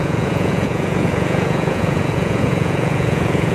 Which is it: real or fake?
fake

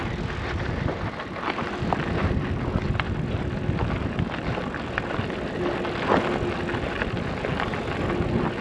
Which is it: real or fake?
real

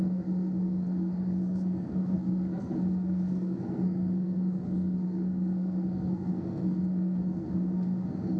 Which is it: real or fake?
fake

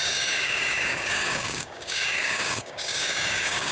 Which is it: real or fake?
fake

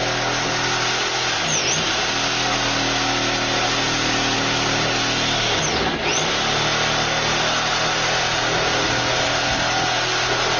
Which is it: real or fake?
real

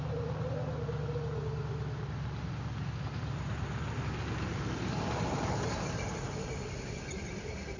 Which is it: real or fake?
real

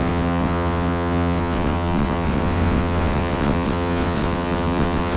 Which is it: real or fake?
fake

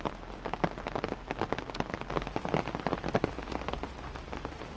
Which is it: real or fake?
real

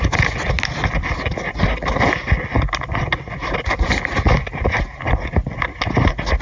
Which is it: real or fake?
real